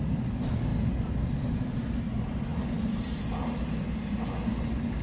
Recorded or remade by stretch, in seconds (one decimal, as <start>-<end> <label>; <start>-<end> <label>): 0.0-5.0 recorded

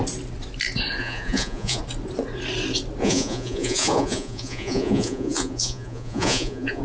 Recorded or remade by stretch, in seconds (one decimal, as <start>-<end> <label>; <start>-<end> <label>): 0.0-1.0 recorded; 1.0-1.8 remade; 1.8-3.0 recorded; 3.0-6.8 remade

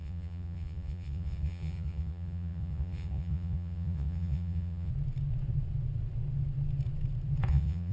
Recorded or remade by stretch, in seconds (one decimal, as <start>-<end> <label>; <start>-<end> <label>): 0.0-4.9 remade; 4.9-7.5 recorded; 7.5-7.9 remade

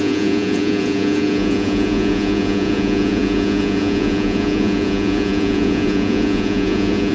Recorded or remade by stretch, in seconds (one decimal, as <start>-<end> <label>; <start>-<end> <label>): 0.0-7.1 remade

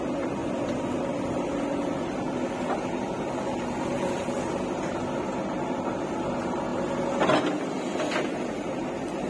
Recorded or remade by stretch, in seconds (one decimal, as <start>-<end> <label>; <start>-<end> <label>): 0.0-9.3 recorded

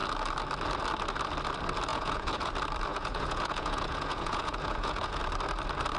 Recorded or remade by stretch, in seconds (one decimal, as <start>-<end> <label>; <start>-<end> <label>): 0.0-1.9 recorded; 1.9-2.5 remade; 2.5-2.9 recorded; 2.9-5.2 remade; 5.2-6.0 recorded

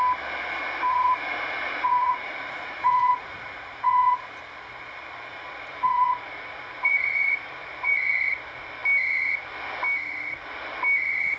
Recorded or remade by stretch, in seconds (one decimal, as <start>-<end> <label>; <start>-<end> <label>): 0.0-0.9 recorded; 0.9-4.4 remade; 4.4-5.3 recorded; 5.3-8.3 remade; 8.3-11.4 recorded

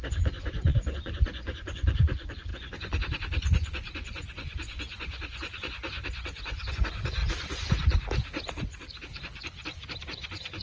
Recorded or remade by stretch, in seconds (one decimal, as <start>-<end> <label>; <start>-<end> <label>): 0.0-7.2 remade; 7.2-10.0 recorded; 10.0-10.6 remade